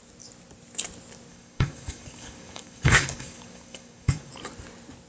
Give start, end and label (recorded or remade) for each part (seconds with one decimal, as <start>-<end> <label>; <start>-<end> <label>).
0.0-1.3 recorded; 1.3-4.3 remade; 4.3-5.1 recorded